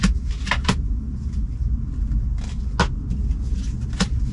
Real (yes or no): yes